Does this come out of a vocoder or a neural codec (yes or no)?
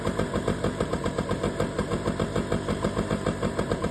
yes